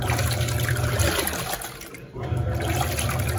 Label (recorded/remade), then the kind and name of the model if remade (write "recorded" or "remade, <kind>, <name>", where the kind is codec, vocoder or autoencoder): recorded